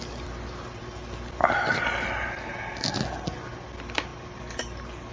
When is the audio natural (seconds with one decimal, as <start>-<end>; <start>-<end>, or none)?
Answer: 0.0-5.1